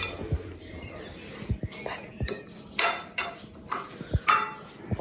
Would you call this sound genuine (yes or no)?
yes